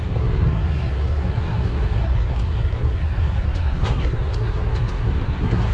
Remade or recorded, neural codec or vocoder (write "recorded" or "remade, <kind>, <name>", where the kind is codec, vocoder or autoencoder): remade, codec, SNAC